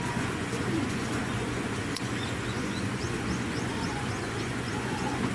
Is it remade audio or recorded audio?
remade